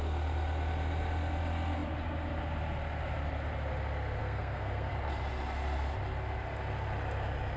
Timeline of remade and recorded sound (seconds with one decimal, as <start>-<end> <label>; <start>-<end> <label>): 0.0-4.2 recorded; 4.2-4.9 remade; 4.9-7.6 recorded